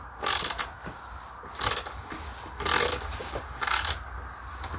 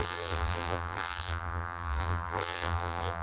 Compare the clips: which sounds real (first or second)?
first